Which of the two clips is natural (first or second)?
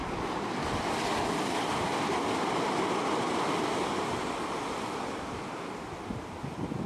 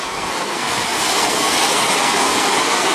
first